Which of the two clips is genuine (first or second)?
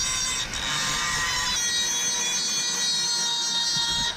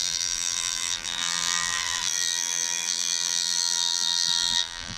first